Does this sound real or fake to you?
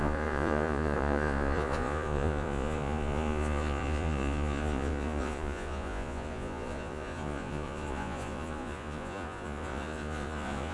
fake